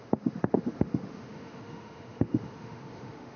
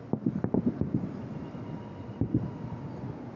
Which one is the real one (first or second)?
second